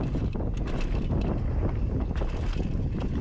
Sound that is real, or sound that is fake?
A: real